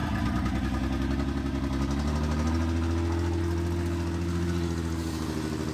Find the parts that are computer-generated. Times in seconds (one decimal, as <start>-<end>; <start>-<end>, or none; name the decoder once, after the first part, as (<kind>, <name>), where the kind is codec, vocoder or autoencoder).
none

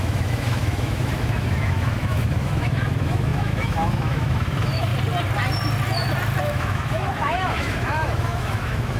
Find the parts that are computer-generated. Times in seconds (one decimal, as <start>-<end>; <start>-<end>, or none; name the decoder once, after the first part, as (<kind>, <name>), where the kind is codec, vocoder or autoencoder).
0.0-4.9 (autoencoder, DAC-VAE); 6.4-9.0

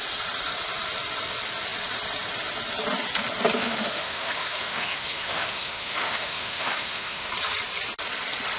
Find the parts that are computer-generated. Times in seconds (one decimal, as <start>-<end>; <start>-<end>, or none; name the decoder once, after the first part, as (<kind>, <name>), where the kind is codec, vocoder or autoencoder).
3.6-7.3 (autoencoder, DAC-VAE)

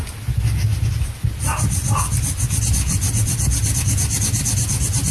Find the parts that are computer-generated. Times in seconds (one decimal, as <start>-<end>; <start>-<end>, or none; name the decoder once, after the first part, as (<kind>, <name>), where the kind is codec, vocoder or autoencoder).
none

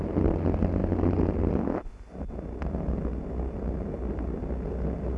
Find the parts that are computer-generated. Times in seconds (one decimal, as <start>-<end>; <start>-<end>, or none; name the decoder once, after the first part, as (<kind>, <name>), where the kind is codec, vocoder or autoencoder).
none